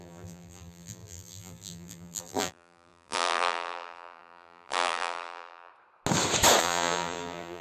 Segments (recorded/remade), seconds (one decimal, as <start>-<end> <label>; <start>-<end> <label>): 0.0-5.7 remade; 5.7-6.6 recorded; 6.6-7.6 remade

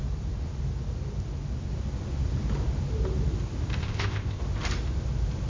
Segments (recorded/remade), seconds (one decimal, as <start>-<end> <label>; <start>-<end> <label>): 0.0-3.8 recorded; 3.8-4.4 remade; 4.4-5.5 recorded

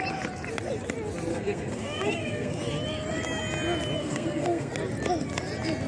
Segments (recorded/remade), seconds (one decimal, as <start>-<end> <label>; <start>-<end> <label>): 0.0-1.3 recorded; 1.3-2.6 remade; 2.6-4.0 recorded; 4.0-4.7 remade; 4.7-5.9 recorded

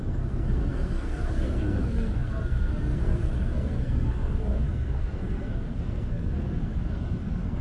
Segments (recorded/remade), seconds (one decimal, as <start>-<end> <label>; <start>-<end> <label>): 0.0-7.6 remade

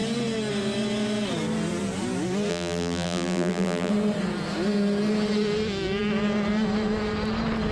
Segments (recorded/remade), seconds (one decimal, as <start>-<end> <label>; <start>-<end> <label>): 0.0-2.5 recorded; 2.5-3.9 remade; 3.9-7.7 recorded

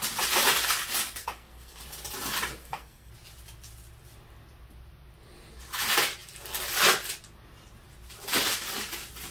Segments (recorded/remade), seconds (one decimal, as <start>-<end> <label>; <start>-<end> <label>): 0.0-1.2 recorded; 1.2-1.8 remade; 1.8-2.6 recorded; 2.6-3.1 remade; 3.1-9.3 recorded

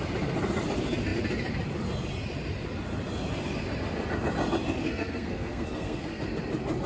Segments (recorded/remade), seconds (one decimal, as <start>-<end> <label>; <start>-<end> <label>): 0.0-4.8 recorded; 4.8-6.2 remade; 6.2-6.9 recorded

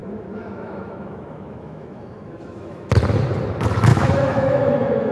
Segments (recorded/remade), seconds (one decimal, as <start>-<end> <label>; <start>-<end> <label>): 0.0-2.9 remade; 2.9-3.9 recorded; 3.9-5.1 remade